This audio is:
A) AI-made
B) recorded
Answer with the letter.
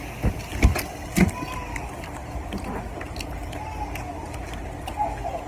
B